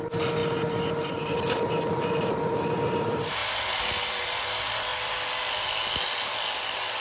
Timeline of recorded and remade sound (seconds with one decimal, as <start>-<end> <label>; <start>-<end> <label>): 0.0-7.0 recorded